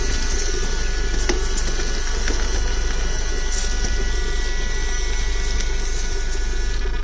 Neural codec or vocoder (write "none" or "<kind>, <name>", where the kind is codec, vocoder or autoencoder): none